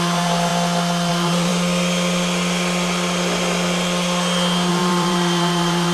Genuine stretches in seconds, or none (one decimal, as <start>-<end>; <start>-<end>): 0.5-1.1; 1.5-4.7